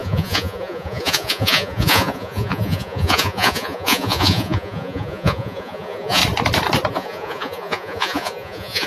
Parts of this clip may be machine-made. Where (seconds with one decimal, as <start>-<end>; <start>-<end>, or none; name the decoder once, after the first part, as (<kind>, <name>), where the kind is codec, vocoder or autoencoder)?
0.0-6.2 (vocoder, Vocos); 6.9-8.9